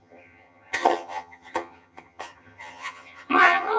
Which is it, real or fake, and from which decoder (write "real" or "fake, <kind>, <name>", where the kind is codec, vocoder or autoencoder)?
fake, vocoder, HiFi-GAN